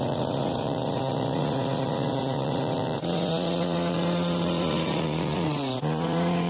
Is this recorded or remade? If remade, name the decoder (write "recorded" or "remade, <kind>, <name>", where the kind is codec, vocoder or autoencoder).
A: remade, vocoder, Vocos